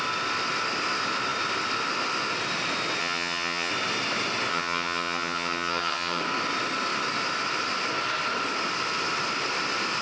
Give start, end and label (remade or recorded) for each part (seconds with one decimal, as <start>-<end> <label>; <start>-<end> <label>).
0.0-3.0 recorded; 3.0-3.7 remade; 3.7-4.5 recorded; 4.5-6.2 remade; 6.2-10.0 recorded